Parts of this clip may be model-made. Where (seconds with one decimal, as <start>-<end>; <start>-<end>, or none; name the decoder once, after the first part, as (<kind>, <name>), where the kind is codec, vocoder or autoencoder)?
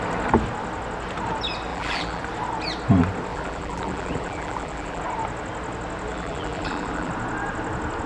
1.7-2.2 (vocoder, BigVGAN v2); 3.3-5.0; 6.1-7.1